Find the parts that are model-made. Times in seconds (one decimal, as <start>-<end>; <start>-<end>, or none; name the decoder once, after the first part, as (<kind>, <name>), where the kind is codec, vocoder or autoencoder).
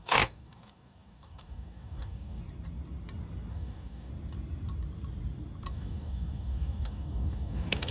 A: 0.0-2.4 (codec, DAC); 3.5-4.1; 5.7-7.9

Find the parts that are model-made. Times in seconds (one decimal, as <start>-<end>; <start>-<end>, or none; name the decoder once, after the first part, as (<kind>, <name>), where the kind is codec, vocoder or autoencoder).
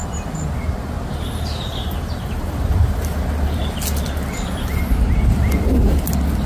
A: 1.7-3.6 (vocoder, BigVGAN v2)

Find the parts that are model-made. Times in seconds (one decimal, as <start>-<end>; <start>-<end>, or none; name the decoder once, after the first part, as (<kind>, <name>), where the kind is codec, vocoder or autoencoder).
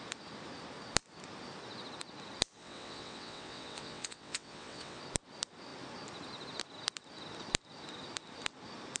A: 2.6-5.0 (vocoder, WaveNeXt)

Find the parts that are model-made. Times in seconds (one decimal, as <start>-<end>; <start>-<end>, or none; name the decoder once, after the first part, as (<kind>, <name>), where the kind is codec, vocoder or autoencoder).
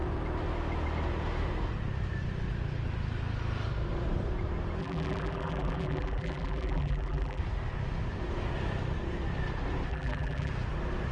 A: 4.8-7.4 (vocoder, BigVGAN v2); 9.9-10.5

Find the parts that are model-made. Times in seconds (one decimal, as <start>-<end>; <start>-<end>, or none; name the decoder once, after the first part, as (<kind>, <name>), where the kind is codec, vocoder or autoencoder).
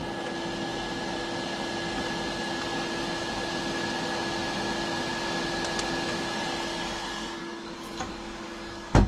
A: 7.4-9.1 (codec, DAC)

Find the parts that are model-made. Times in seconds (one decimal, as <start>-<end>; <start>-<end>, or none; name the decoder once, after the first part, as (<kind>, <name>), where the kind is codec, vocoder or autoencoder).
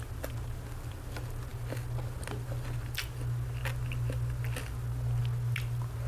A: none